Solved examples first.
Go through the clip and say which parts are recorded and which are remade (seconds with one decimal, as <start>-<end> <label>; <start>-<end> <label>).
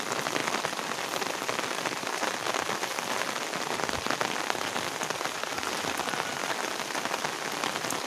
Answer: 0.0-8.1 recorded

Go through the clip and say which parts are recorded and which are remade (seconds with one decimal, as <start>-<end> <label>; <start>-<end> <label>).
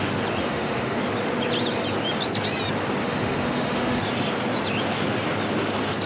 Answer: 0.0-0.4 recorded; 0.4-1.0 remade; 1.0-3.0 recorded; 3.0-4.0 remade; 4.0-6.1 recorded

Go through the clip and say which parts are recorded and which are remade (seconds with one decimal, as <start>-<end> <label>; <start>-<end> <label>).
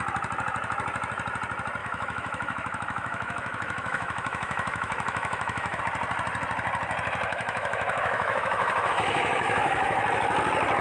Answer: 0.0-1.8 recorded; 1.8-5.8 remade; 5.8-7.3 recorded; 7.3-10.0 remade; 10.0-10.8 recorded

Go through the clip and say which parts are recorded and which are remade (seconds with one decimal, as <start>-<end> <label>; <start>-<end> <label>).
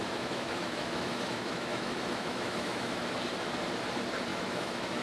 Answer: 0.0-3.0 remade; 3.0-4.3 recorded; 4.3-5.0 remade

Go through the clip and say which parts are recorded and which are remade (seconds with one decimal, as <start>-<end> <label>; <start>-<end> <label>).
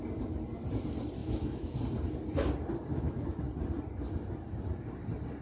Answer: 0.0-1.2 recorded; 1.2-1.8 remade; 1.8-2.9 recorded; 2.9-3.4 remade; 3.4-5.4 recorded